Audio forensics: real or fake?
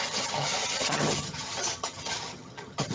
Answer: fake